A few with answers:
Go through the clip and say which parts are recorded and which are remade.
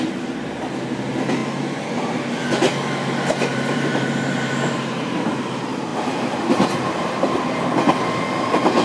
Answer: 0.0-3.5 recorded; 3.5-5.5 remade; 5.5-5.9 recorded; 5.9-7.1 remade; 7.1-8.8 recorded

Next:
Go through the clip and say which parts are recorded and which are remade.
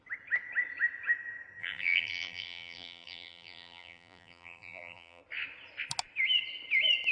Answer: 0.0-1.6 recorded; 1.6-5.2 remade; 5.2-7.1 recorded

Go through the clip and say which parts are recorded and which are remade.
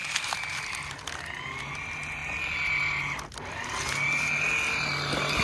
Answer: 0.0-5.4 recorded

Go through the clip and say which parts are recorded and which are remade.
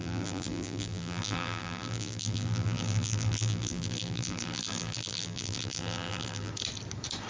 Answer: 0.0-6.5 remade; 6.5-7.3 recorded